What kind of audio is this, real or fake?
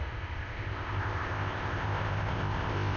fake